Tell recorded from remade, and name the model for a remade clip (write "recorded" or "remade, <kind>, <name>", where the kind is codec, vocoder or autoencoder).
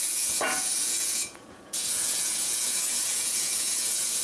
remade, vocoder, Vocos